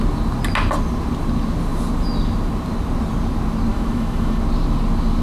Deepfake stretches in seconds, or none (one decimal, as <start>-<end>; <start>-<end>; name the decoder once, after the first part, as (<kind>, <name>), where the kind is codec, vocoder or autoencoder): 3.7-4.4 (autoencoder, DAC-VAE)